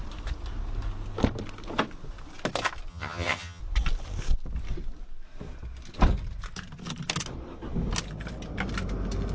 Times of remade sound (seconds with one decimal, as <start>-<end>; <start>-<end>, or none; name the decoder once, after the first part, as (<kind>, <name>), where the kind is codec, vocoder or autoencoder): 2.9-3.6 (vocoder, HiFi-GAN)

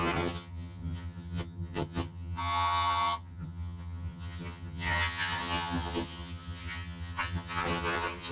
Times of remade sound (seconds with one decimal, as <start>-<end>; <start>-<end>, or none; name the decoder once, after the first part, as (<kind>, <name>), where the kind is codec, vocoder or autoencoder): 0.0-8.3 (vocoder, HiFi-GAN)

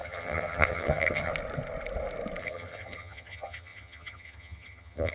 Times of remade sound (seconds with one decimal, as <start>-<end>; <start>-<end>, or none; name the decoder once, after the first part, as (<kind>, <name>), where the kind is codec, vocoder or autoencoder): 0.0-1.3 (vocoder, HiFi-GAN); 2.4-5.1

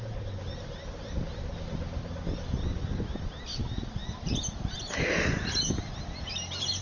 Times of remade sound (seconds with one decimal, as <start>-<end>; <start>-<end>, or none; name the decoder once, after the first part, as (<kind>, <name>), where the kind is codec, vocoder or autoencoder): none

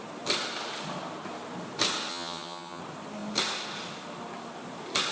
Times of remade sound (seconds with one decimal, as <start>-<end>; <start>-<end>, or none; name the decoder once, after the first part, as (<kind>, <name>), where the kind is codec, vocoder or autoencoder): 2.1-2.8 (vocoder, HiFi-GAN)

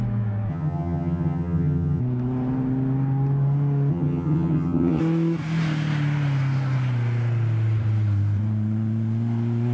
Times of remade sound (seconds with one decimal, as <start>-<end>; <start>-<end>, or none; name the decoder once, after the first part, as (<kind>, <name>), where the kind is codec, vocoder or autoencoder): 0.5-2.0 (vocoder, HiFi-GAN); 3.9-5.0

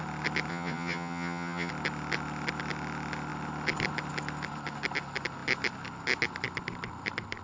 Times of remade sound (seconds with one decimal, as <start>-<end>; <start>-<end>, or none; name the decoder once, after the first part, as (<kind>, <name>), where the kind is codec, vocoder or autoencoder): 0.5-1.7 (vocoder, HiFi-GAN)

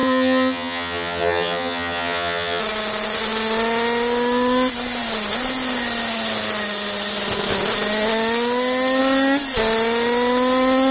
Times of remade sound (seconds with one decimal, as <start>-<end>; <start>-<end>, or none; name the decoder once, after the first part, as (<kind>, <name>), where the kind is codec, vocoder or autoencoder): 0.0-2.6 (vocoder, HiFi-GAN)